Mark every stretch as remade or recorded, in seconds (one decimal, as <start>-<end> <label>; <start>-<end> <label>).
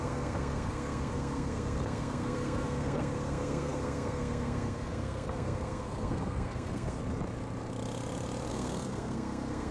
0.0-7.0 remade; 7.0-8.5 recorded; 8.5-9.7 remade